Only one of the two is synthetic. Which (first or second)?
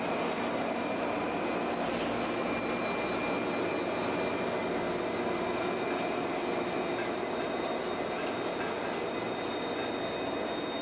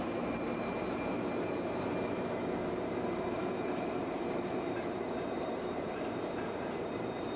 second